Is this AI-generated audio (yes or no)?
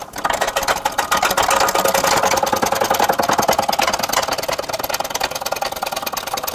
no